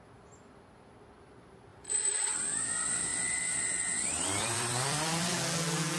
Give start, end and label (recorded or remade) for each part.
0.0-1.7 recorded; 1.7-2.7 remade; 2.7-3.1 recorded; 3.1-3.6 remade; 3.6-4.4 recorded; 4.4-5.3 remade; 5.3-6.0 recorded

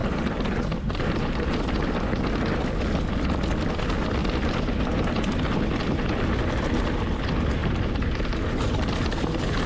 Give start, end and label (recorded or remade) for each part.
0.0-1.7 remade; 1.7-7.6 recorded; 7.6-9.2 remade; 9.2-9.7 recorded

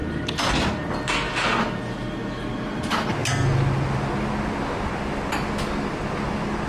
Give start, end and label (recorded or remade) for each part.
0.0-6.7 recorded

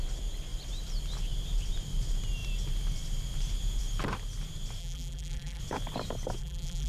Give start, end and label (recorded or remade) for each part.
0.0-4.8 recorded; 4.8-5.6 remade; 5.6-6.4 recorded; 6.4-6.9 remade

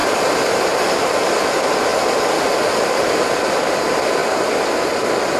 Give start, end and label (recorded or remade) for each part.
0.0-1.9 remade; 1.9-2.8 recorded; 2.8-4.2 remade; 4.2-5.4 recorded

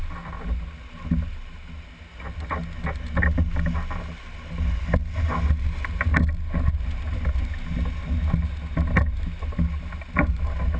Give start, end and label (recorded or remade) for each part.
0.0-10.8 recorded

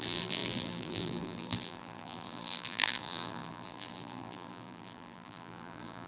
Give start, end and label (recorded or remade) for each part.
0.0-6.1 remade

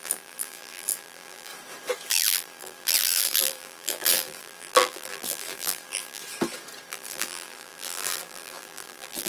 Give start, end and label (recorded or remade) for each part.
0.0-1.5 remade; 1.5-2.1 recorded; 2.1-6.2 remade; 6.2-6.9 recorded; 6.9-9.3 remade